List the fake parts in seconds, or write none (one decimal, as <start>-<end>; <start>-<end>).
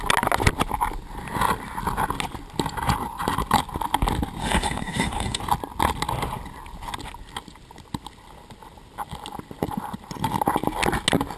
4.4-5.4